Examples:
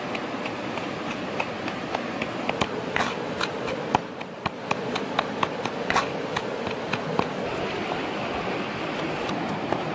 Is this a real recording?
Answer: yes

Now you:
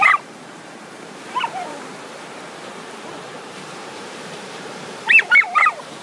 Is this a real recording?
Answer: no